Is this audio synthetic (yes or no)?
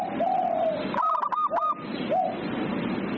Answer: no